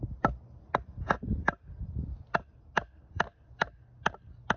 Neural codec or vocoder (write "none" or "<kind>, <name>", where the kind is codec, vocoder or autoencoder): none